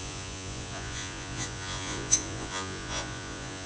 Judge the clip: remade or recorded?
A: remade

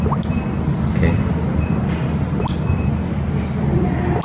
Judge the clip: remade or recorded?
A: recorded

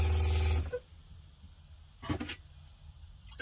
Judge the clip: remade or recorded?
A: recorded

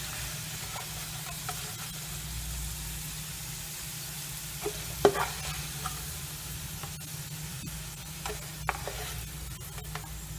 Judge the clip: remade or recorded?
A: recorded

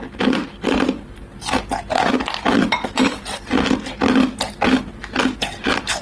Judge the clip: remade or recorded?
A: recorded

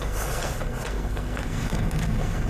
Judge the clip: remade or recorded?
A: remade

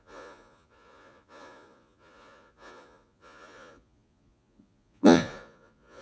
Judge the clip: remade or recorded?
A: remade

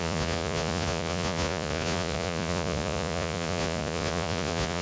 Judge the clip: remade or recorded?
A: remade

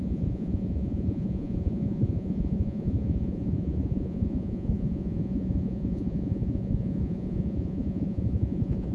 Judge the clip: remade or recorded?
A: remade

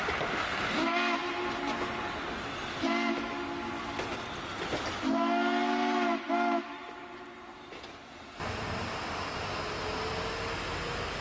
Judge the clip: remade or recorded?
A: recorded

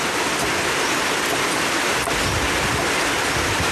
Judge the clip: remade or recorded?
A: recorded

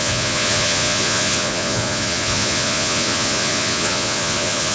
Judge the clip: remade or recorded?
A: remade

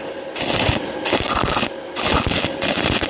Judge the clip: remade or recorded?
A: recorded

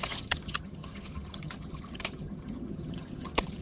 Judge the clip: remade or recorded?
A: remade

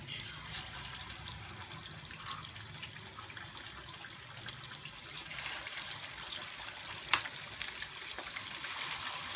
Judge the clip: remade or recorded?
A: recorded